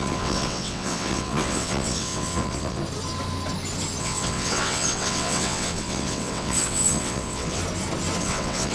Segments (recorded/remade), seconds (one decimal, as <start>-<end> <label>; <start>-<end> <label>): 0.0-2.8 remade; 2.8-4.0 recorded; 4.0-7.6 remade; 7.6-8.2 recorded; 8.2-8.7 remade